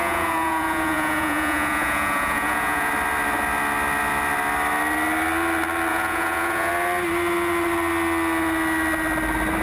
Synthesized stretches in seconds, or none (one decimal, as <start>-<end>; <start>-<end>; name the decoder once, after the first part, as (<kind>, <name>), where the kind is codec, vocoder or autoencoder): 0.0-2.9 (vocoder, Vocos); 5.9-6.7